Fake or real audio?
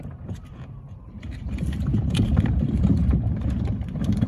fake